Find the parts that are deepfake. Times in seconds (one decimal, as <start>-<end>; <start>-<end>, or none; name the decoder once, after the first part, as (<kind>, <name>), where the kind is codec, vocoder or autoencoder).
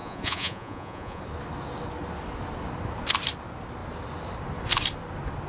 0.0-1.2 (vocoder, Vocos)